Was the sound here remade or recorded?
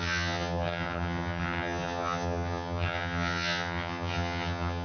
remade